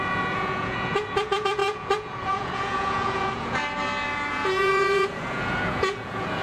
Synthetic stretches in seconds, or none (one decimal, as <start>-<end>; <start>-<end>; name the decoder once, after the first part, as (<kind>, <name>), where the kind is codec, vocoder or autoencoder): 0.0-3.6 (vocoder, Vocos); 4.3-6.4